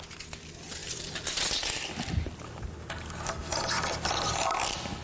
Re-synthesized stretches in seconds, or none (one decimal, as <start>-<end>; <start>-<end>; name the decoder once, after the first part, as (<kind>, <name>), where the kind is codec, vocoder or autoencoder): none